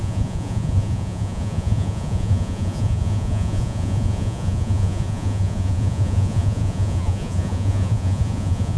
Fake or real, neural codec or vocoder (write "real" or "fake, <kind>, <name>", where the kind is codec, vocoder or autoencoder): fake, vocoder, Vocos